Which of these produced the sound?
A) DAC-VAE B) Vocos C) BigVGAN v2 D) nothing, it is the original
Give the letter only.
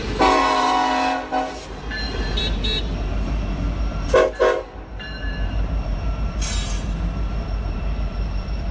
C